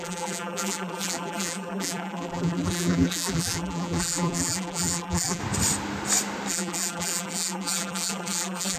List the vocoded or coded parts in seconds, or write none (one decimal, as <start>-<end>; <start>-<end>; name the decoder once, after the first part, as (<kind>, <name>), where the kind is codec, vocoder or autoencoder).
0.0-5.4 (vocoder, BigVGAN v2); 6.5-8.8